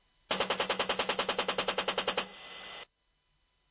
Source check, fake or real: real